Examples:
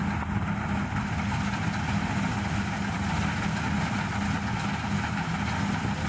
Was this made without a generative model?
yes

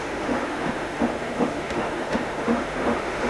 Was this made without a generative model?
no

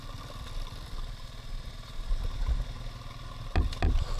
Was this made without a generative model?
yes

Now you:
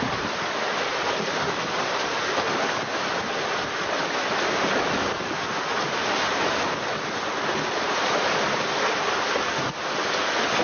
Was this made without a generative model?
yes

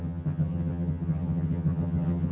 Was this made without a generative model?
no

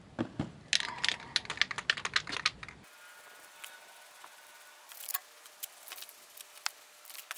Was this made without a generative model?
yes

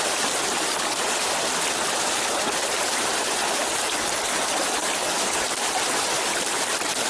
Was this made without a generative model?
yes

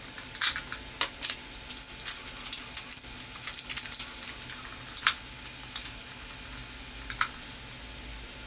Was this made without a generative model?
yes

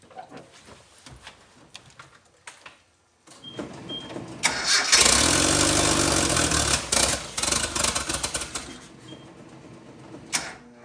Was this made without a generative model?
yes